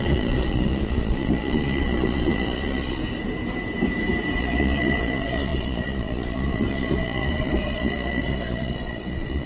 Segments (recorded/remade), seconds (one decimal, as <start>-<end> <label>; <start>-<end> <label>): 0.0-3.0 remade; 3.0-4.4 recorded; 4.4-9.5 remade